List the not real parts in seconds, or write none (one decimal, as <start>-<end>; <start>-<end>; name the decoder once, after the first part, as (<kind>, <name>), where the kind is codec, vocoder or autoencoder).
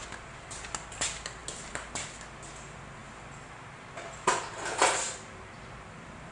none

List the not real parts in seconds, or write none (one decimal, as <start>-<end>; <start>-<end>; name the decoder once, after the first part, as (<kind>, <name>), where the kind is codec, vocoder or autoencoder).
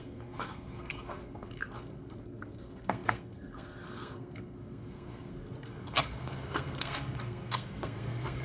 0.0-8.4 (codec, SNAC)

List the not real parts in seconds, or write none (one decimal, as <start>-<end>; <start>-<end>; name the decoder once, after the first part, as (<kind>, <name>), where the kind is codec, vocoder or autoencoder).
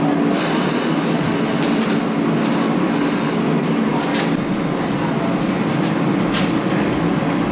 none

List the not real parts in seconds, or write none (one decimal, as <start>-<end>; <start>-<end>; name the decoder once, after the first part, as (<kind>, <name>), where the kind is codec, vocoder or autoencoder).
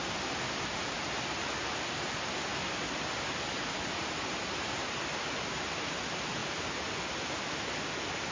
none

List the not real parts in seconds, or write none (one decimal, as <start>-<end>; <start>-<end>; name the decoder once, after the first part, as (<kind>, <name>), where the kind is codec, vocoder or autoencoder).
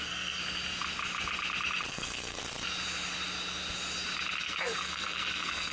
0.0-0.4 (codec, SNAC); 1.9-2.4; 4.4-5.7